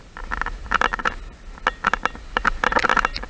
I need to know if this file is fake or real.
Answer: real